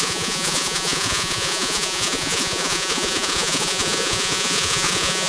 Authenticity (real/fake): fake